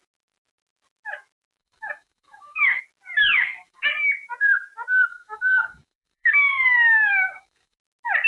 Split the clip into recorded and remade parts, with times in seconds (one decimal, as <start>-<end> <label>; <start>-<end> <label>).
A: 0.0-1.6 recorded; 1.6-2.8 remade; 2.8-3.2 recorded; 3.2-3.9 remade; 3.9-5.1 recorded; 5.1-7.8 remade; 7.8-8.3 recorded